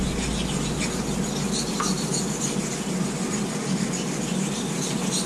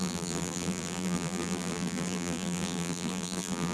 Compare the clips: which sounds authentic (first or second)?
first